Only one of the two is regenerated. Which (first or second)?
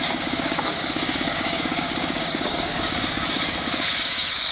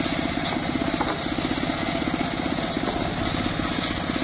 first